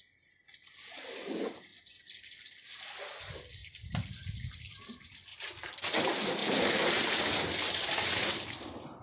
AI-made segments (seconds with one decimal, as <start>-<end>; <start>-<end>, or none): 3.6-4.8; 5.3-6.0; 6.4-8.2